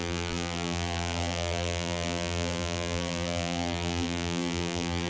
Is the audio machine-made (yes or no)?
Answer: yes